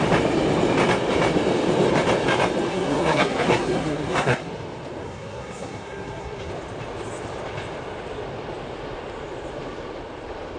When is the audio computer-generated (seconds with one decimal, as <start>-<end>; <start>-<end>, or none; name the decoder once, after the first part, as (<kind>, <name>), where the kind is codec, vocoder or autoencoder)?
2.7-4.5 (codec, SNAC); 5.0-6.5